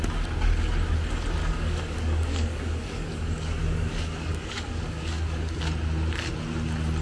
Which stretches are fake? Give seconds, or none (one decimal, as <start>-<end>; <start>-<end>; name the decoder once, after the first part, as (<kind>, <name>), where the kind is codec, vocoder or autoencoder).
1.4-5.6 (codec, DAC)